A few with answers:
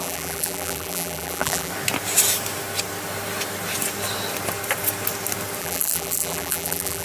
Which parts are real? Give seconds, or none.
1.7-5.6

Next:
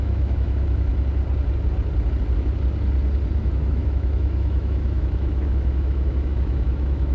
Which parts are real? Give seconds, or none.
0.9-3.4

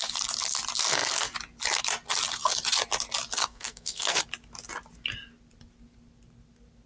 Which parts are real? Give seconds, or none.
0.0-3.4; 4.2-6.9

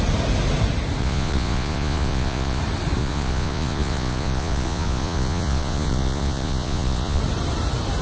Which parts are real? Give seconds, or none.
0.0-1.0; 2.6-3.0; 7.2-8.0

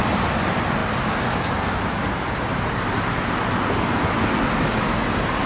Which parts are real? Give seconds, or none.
0.0-5.5